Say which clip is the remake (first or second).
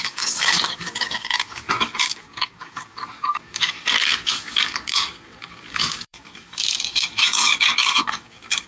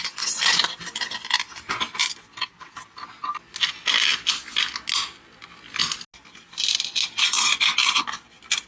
first